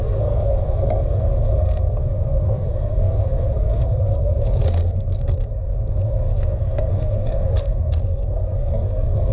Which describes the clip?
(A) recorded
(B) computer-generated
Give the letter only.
B